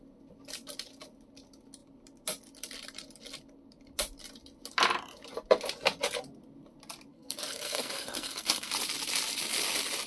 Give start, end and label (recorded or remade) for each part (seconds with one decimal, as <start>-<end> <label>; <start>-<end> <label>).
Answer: 0.0-7.1 recorded; 7.1-8.7 remade; 8.7-10.1 recorded